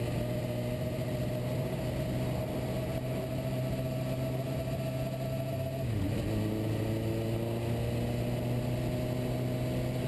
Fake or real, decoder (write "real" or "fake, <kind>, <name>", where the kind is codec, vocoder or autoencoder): real